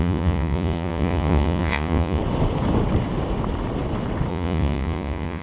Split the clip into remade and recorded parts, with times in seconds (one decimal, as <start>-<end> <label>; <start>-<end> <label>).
0.0-2.2 remade; 2.2-4.3 recorded; 4.3-5.4 remade